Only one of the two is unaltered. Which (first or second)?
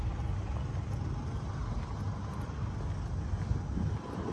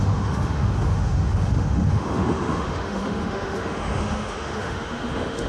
first